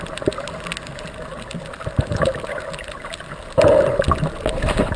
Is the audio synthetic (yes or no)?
no